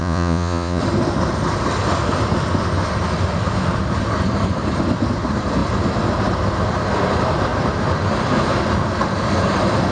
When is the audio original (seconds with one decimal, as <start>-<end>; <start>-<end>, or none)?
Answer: 0.8-9.9